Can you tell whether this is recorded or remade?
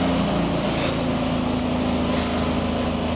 recorded